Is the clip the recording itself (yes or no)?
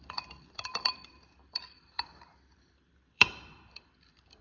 no